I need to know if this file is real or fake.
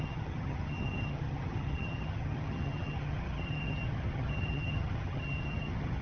fake